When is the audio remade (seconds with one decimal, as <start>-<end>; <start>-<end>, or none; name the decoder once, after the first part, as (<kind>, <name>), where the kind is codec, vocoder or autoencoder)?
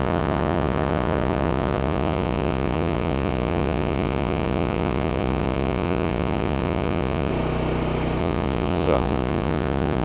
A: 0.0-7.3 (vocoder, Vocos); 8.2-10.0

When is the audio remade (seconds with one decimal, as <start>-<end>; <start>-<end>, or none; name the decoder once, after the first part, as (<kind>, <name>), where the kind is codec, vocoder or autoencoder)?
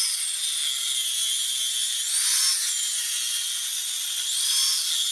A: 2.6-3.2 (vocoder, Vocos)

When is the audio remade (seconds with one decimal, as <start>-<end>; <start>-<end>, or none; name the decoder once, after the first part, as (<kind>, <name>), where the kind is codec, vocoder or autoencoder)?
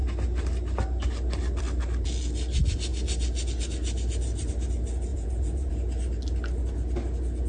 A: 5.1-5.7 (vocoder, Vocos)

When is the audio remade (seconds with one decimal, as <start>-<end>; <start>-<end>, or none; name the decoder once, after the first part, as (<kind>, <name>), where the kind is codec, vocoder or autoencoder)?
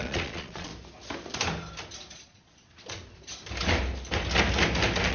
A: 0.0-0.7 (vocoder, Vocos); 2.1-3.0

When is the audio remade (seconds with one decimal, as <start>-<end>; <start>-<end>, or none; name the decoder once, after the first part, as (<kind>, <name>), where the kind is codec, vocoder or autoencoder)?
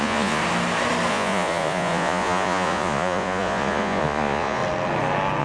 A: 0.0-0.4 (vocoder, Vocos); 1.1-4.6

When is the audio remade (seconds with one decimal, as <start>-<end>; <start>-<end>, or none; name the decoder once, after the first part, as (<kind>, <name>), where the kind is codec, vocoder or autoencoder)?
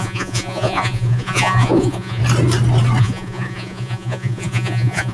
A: 0.0-2.2 (vocoder, Vocos); 3.0-5.1